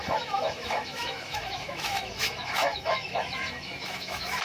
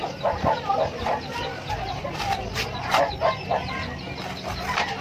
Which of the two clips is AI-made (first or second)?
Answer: first